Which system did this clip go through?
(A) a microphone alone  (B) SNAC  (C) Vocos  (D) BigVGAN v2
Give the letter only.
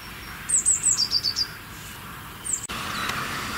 D